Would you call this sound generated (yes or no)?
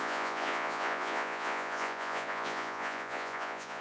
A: yes